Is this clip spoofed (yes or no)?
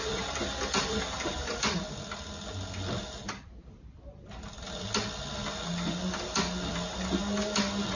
no